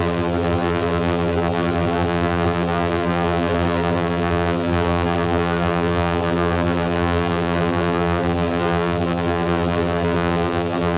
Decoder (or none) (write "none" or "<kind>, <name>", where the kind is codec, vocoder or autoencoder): vocoder, BigVGAN v2